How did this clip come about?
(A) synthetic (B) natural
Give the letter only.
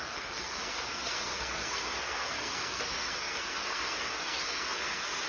A